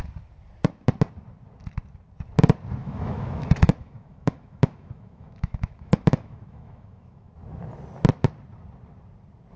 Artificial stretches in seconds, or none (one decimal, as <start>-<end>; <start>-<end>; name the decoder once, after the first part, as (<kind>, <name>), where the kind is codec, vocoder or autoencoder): 2.8-7.3 (autoencoder, DAC-VAE)